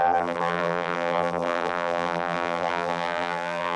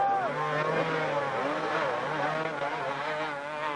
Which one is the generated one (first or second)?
first